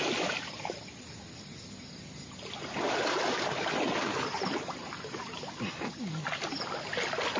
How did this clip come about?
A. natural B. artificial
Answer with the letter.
A